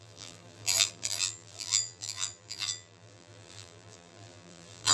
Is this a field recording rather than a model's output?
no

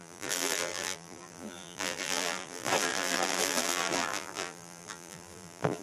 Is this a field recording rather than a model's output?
no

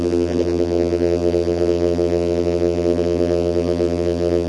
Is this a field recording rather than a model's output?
no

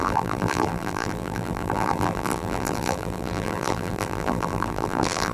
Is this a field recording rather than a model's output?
no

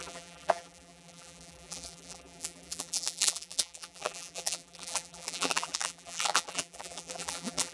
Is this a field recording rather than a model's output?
no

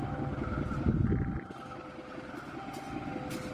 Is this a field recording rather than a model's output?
yes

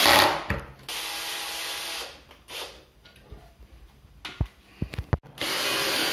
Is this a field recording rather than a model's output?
yes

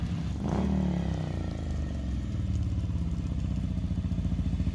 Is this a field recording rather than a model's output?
yes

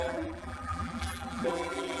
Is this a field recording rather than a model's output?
no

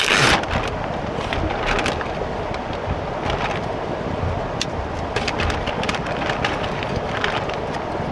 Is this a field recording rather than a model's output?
no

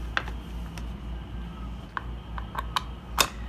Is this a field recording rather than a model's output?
yes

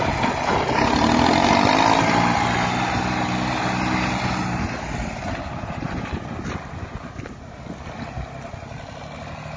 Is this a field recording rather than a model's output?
yes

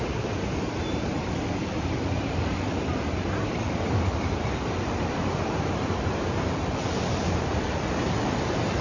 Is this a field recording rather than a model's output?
no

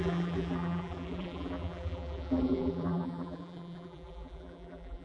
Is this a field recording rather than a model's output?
no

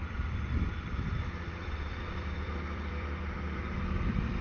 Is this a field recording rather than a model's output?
no